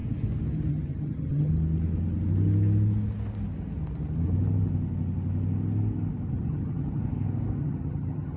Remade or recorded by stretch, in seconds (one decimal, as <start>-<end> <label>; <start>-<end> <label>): 0.0-0.7 recorded; 0.7-1.5 remade; 1.5-6.3 recorded; 6.3-7.0 remade; 7.0-7.6 recorded; 7.6-8.4 remade